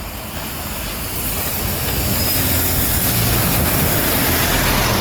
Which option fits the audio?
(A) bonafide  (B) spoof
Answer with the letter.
A